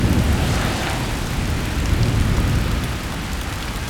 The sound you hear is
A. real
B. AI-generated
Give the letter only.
A